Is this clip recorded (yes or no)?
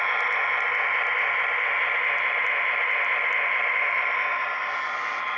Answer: yes